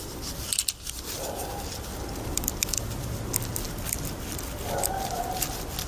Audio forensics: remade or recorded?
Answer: recorded